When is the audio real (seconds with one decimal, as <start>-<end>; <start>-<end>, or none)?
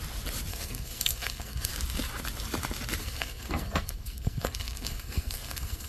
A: 0.0-0.5; 1.7-3.0